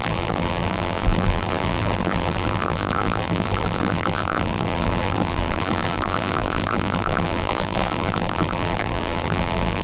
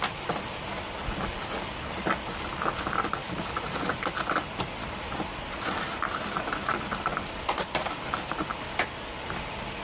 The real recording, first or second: second